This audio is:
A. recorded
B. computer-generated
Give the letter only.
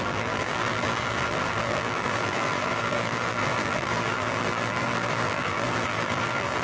B